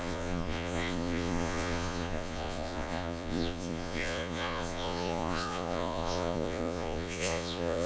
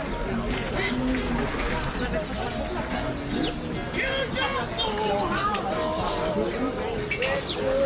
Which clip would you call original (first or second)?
second